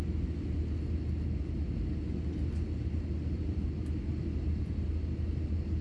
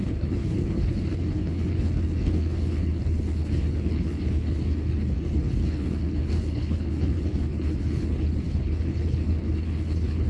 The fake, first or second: second